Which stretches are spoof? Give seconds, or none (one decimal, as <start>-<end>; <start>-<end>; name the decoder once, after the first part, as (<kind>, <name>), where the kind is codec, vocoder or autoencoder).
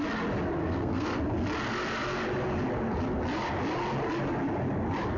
0.6-1.2 (codec, SNAC)